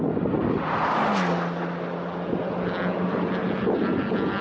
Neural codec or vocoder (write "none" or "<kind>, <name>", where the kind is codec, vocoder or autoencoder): none